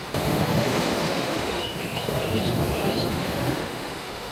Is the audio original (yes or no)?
no